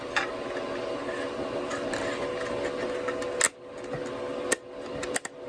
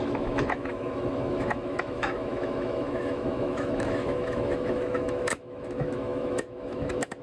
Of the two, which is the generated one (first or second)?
second